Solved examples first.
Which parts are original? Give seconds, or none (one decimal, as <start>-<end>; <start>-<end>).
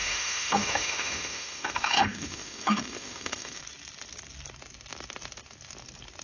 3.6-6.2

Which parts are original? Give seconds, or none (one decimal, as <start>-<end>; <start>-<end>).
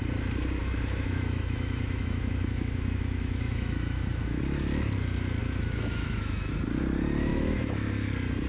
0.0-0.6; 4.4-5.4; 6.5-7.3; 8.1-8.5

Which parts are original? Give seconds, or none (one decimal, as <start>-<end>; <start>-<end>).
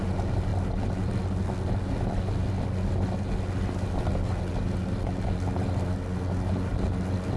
0.0-7.4